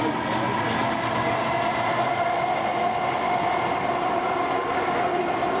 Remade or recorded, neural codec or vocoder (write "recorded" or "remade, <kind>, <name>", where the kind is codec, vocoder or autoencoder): recorded